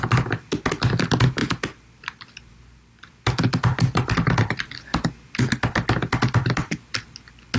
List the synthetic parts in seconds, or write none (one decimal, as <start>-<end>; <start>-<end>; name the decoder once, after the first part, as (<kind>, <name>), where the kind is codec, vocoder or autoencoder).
none

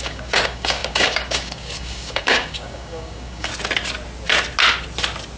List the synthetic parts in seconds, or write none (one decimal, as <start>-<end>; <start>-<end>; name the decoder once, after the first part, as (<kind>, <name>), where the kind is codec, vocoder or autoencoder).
0.0-3.5 (codec, DAC)